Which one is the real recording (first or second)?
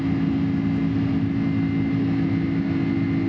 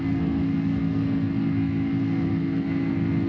first